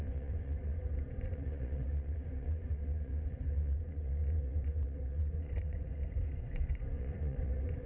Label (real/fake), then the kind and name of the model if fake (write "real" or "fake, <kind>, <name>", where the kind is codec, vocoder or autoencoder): fake, vocoder, Vocos